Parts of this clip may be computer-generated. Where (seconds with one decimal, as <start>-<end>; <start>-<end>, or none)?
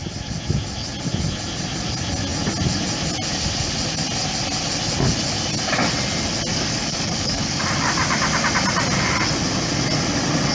6.5-7.6